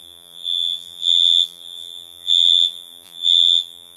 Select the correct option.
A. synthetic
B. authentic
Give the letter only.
A